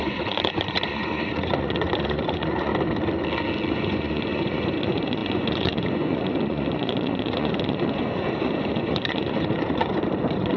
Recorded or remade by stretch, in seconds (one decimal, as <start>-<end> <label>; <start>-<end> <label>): 0.0-2.7 remade; 2.7-3.7 recorded; 3.7-10.6 remade